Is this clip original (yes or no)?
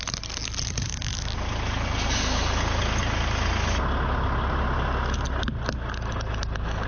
yes